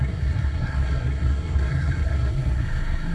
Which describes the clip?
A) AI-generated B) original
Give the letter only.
A